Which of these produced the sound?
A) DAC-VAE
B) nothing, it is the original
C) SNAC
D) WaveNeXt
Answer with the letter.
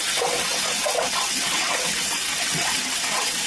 D